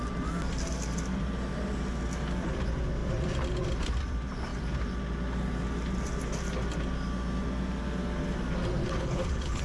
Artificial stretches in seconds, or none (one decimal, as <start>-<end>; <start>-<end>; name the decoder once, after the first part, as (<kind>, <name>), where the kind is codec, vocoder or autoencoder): 8.8-9.6 (codec, HILCodec)